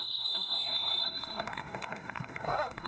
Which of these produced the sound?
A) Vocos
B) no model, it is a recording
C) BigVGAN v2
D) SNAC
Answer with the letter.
D